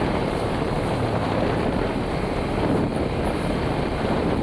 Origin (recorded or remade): remade